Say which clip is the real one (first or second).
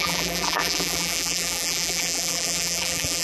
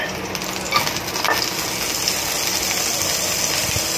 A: second